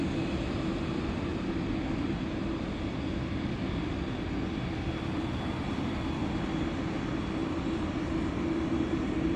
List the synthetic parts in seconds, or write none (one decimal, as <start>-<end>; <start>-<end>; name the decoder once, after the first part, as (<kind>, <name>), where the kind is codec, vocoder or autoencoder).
7.4-8.0 (vocoder, BigVGAN v2)